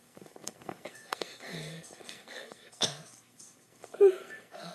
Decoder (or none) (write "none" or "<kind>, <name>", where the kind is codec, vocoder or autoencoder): codec, SNAC